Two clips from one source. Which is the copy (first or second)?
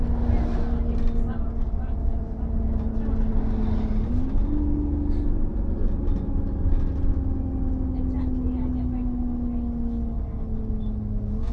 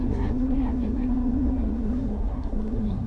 second